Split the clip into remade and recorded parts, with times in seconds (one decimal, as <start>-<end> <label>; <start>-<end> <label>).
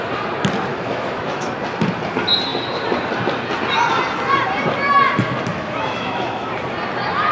0.0-0.7 recorded; 0.7-1.5 remade; 1.5-5.5 recorded; 5.5-6.5 remade; 6.5-7.3 recorded